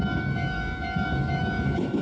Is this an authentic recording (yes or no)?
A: no